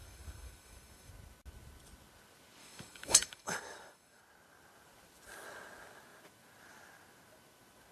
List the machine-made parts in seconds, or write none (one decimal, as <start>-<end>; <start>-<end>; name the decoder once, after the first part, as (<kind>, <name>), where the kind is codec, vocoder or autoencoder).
0.0-1.1 (codec, DAC); 2.6-4.2